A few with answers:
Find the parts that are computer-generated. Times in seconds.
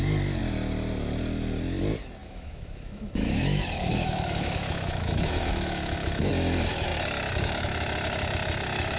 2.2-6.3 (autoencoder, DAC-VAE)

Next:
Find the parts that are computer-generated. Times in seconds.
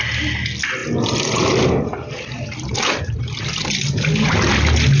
none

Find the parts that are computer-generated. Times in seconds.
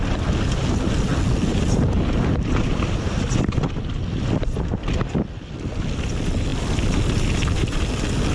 none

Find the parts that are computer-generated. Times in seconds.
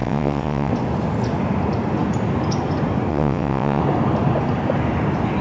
0.0-0.7 (vocoder, WaveNeXt); 3.1-3.8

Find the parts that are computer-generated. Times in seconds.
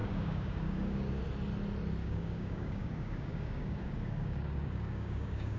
0.0-1.2 (codec, DAC); 2.0-5.6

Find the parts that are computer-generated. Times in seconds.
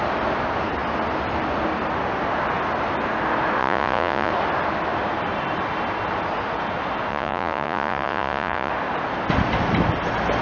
3.6-4.3 (vocoder, Vocos); 7.1-8.7